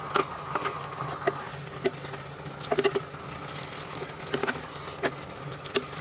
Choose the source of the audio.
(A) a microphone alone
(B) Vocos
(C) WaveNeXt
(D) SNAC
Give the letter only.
A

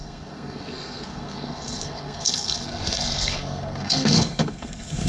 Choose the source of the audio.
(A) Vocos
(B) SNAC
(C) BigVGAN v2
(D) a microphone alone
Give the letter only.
B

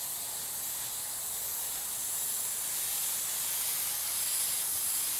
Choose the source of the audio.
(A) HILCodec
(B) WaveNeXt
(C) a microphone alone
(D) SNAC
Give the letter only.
C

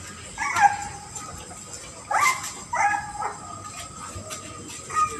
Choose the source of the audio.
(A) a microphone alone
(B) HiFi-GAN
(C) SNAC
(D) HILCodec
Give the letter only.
A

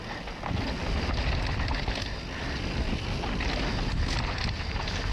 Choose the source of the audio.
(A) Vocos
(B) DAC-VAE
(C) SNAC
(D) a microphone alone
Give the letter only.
D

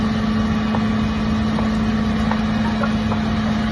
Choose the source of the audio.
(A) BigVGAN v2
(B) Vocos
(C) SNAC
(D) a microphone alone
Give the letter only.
D